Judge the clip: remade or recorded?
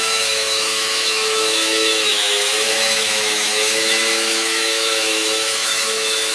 remade